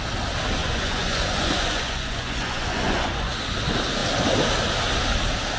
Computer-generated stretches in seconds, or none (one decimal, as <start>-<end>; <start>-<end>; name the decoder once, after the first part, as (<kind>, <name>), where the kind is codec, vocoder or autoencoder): 0.6-3.3 (vocoder, Vocos)